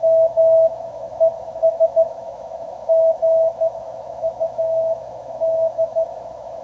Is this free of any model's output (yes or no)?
no